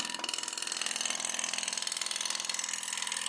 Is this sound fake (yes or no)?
no